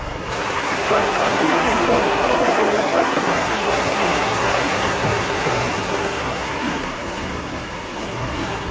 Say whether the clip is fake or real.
fake